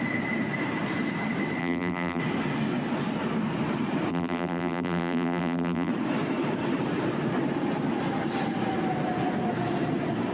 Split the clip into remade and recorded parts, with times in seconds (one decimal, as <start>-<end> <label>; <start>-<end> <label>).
0.0-1.6 recorded; 1.6-2.2 remade; 2.2-4.1 recorded; 4.1-5.9 remade; 5.9-10.3 recorded